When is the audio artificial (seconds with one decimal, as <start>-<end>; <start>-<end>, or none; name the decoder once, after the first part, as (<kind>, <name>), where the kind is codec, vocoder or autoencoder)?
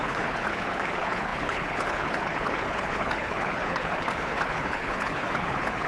0.0-5.9 (codec, HILCodec)